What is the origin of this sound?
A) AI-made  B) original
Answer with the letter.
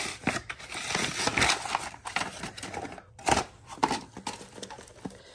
B